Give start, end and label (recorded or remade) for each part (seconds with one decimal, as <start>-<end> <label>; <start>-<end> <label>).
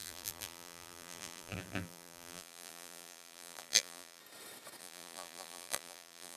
0.0-4.2 remade; 4.2-4.8 recorded; 4.8-6.4 remade